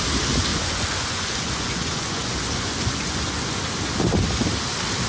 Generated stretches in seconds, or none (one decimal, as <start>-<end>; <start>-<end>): 0.5-3.6